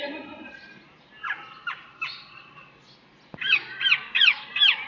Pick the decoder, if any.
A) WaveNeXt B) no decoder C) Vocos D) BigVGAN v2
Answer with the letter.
B